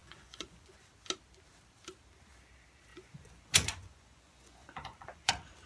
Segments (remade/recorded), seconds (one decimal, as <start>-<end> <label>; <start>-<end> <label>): 0.0-0.8 remade; 0.8-2.9 recorded; 2.9-5.3 remade; 5.3-5.7 recorded